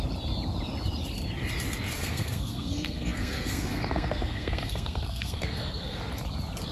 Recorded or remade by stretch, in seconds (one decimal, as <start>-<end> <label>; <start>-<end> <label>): 0.0-2.0 recorded; 2.0-6.0 remade; 6.0-6.7 recorded